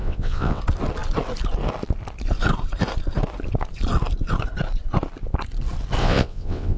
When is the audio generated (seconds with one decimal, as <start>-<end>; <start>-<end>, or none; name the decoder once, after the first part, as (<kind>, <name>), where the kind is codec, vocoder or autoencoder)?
0.0-0.6 (vocoder, WaveNeXt); 6.0-6.8